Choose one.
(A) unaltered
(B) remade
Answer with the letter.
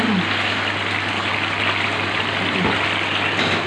B